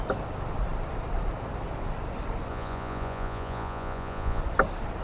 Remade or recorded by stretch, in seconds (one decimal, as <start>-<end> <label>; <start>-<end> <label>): 0.0-2.5 recorded; 2.5-4.4 remade; 4.4-5.0 recorded